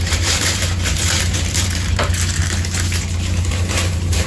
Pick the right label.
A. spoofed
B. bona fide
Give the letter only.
A